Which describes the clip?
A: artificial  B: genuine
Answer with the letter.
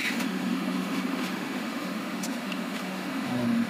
A